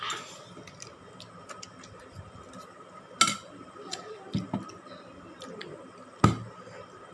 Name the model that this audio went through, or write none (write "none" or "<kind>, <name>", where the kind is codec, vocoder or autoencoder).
none